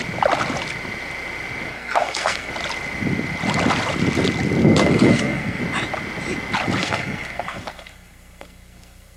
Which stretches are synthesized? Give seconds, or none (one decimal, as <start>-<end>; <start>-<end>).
1.7-2.5; 4.6-5.6; 6.8-9.2